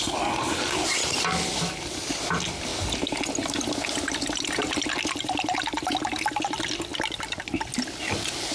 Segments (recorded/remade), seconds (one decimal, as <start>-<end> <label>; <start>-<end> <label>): 0.0-8.5 recorded